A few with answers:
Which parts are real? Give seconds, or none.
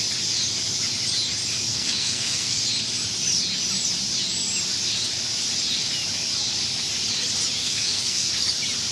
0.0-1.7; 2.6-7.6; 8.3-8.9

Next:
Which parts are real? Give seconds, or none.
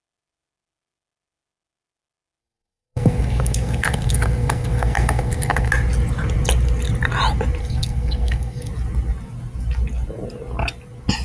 0.0-2.4; 5.7-7.6; 8.7-11.2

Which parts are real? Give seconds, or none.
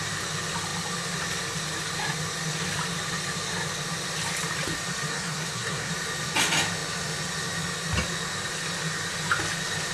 0.0-5.1; 5.9-9.9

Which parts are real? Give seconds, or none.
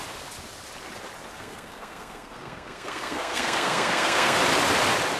0.0-1.3; 4.4-5.2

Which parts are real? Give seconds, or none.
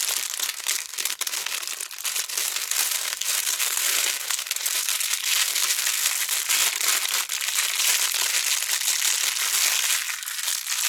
0.0-0.5; 1.5-2.3; 6.1-10.9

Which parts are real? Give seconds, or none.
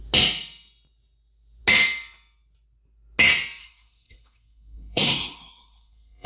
0.0-3.6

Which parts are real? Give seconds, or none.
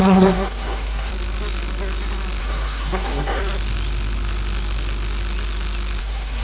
1.1-2.4; 3.4-6.0